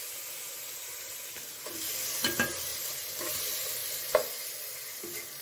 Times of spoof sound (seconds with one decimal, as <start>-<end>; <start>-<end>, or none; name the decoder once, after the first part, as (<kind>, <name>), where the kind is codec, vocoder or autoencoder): none